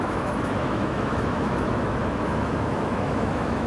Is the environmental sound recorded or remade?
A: remade